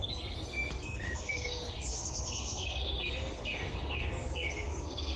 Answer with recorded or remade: remade